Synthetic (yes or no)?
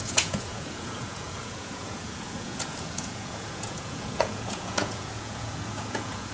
yes